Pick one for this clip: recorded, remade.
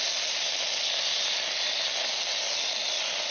recorded